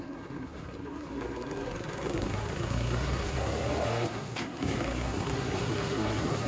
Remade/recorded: remade